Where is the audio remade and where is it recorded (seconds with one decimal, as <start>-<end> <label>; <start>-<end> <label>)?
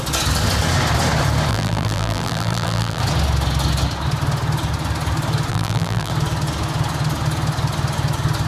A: 0.0-1.5 recorded; 1.5-3.0 remade; 3.0-5.5 recorded; 5.5-6.1 remade; 6.1-8.5 recorded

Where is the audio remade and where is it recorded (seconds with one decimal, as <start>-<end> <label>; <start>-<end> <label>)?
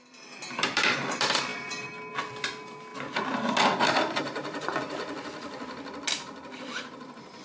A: 0.0-1.5 remade; 1.5-2.1 recorded; 2.1-2.9 remade; 2.9-4.2 recorded; 4.2-7.4 remade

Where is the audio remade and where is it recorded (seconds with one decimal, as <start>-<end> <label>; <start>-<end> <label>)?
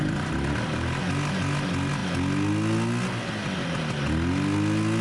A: 0.0-5.0 recorded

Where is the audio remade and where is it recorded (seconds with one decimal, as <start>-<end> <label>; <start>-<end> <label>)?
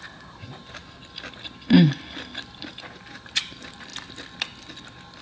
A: 0.0-0.6 remade; 0.6-2.7 recorded; 2.7-3.9 remade; 3.9-5.2 recorded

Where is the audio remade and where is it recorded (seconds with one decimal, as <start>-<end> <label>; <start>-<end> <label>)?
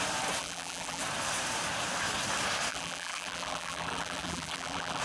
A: 0.0-0.4 recorded; 0.4-1.0 remade; 1.0-2.7 recorded; 2.7-5.0 remade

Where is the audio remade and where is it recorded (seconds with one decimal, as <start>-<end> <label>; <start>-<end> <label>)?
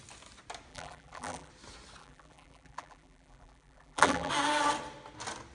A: 0.0-0.7 recorded; 0.7-1.5 remade; 1.5-2.0 recorded; 2.0-4.3 remade; 4.3-5.5 recorded